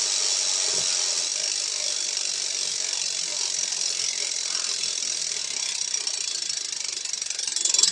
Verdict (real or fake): real